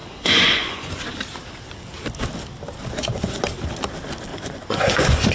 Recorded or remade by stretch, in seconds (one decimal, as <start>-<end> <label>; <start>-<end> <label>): 0.0-1.0 remade; 1.0-2.9 recorded; 2.9-3.4 remade; 3.4-4.3 recorded; 4.3-5.3 remade